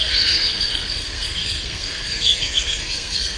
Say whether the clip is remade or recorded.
remade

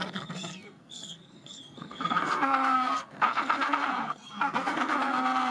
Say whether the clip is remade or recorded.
remade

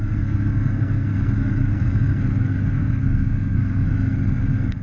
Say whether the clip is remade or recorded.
remade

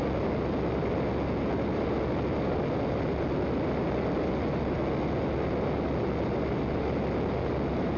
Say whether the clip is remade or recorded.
recorded